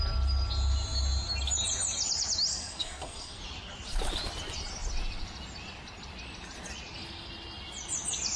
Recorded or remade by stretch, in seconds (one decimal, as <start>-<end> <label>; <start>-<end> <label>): 0.0-2.5 recorded; 2.5-3.4 remade; 3.4-8.4 recorded